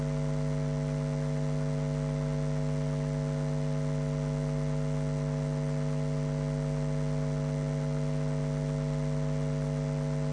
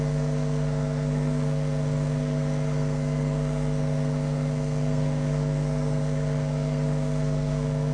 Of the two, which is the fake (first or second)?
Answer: second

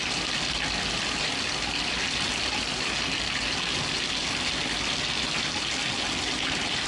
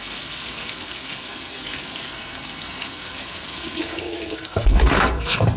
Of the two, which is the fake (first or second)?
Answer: second